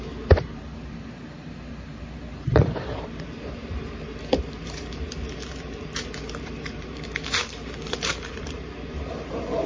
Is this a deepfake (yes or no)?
yes